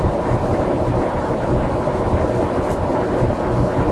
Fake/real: real